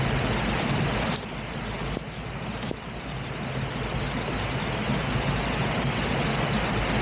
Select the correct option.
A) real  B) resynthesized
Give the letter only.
A